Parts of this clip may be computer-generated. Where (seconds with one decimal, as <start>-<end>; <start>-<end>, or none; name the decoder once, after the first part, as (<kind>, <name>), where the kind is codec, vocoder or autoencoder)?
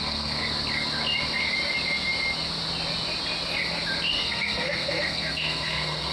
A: 0.0-0.4 (codec, SNAC); 4.1-6.1